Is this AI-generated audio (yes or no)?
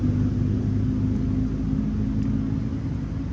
no